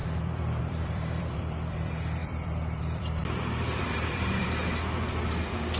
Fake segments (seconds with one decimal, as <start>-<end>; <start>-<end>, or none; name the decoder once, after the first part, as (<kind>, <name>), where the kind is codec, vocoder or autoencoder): 0.0-5.8 (vocoder, BigVGAN v2)

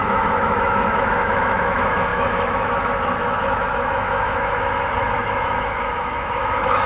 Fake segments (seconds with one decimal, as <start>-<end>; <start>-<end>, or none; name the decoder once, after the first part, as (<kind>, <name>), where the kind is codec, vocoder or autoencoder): 0.0-6.9 (autoencoder, DAC-VAE)

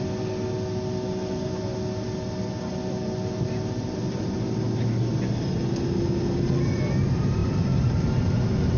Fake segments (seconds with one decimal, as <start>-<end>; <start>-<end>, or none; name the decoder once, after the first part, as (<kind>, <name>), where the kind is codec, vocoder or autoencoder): 7.4-8.1 (vocoder, BigVGAN v2)